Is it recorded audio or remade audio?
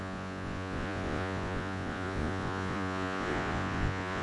remade